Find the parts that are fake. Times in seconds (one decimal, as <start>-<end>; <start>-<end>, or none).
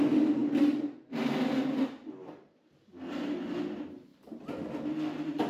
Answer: 4.1-4.7